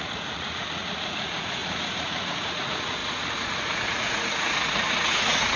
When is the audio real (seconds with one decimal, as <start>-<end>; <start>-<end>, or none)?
none